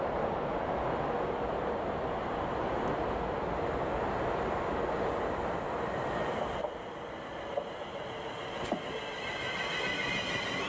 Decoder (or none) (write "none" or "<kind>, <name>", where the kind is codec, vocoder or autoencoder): none